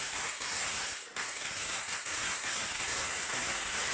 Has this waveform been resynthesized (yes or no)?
yes